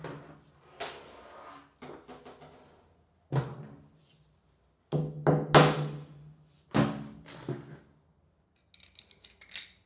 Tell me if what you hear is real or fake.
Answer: real